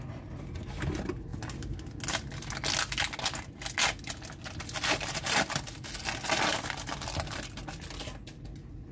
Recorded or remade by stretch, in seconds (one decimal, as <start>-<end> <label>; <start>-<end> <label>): 0.0-8.9 recorded